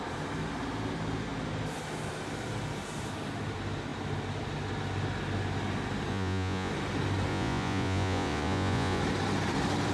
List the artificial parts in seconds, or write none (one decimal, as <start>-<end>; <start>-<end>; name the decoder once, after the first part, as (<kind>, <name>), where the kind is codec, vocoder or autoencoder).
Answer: 6.1-6.7 (vocoder, Vocos); 7.3-9.0